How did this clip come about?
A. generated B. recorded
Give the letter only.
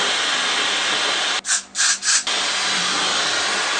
B